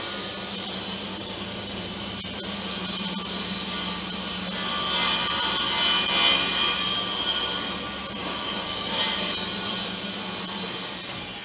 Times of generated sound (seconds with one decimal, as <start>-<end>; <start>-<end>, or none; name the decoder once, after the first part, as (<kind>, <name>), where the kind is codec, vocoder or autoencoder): 1.1-1.8 (codec, DAC); 8.2-9.0